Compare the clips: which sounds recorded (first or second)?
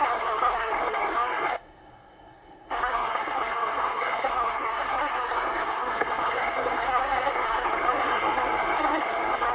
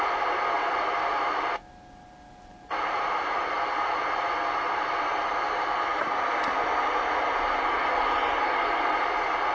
second